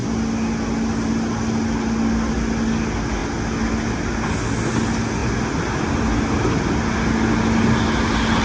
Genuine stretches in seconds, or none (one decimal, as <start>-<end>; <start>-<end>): 0.0-8.4